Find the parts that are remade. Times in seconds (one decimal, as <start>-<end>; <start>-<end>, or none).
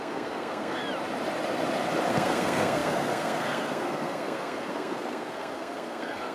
0.0-0.8; 2.1-6.3